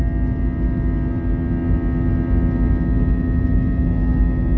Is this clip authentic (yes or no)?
yes